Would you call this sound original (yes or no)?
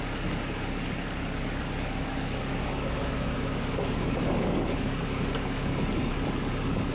no